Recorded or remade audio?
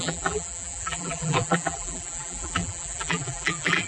remade